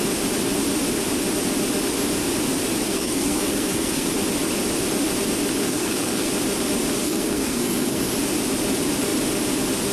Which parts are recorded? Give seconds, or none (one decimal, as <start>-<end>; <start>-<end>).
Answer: 0.0-2.9; 4.1-5.6; 6.3-7.0; 8.1-9.9